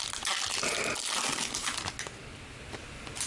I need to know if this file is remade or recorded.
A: recorded